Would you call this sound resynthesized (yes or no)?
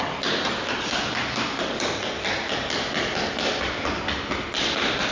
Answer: no